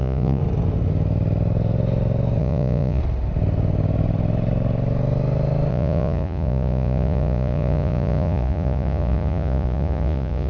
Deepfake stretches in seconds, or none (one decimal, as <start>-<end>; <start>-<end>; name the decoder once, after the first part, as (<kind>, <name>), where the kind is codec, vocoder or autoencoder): 0.0-0.4 (vocoder, Vocos); 2.4-3.0; 5.7-10.5